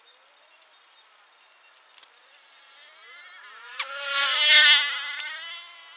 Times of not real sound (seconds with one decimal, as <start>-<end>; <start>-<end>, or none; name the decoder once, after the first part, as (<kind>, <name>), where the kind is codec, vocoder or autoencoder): none